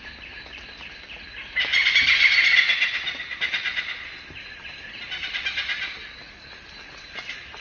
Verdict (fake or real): real